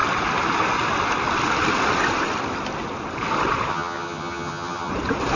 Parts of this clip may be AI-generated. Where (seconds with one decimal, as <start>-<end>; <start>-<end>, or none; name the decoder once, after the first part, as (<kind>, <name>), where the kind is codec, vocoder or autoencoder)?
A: 3.7-4.9 (vocoder, HiFi-GAN)